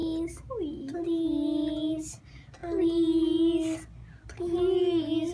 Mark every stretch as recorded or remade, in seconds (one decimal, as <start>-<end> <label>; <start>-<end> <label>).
0.0-5.3 recorded